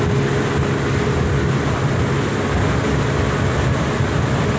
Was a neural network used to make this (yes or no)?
no